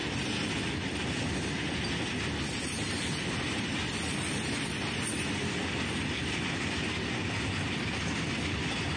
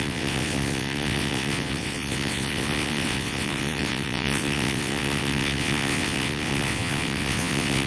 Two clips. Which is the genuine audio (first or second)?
first